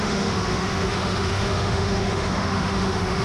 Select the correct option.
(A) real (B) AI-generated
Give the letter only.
B